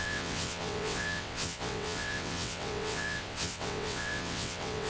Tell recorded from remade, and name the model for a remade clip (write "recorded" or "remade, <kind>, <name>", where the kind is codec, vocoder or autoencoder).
remade, vocoder, WaveNeXt